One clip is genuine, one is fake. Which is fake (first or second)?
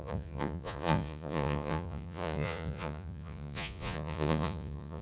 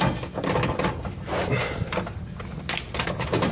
first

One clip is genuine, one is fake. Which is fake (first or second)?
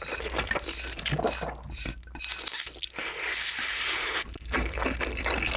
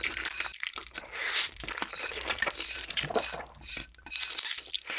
second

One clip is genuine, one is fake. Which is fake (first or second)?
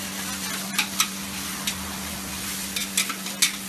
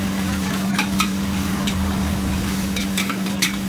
second